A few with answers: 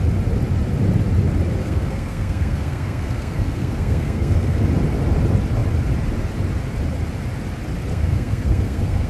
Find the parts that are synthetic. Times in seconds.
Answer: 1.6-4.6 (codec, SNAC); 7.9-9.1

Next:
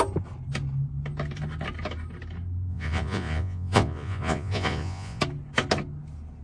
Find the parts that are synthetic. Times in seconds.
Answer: 2.7-5.2 (vocoder, Vocos)